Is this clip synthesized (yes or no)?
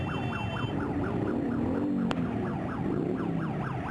no